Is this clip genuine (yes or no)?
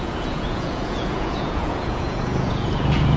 no